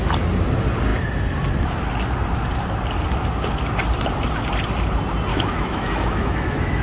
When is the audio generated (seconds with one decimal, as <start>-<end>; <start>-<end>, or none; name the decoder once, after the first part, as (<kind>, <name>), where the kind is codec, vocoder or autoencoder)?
5.3-6.8 (autoencoder, DAC-VAE)